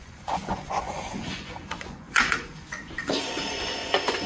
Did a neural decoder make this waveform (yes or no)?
yes